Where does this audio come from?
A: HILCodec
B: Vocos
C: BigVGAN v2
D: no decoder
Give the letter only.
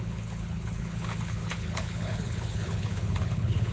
A